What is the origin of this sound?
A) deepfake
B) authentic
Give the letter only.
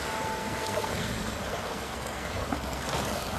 A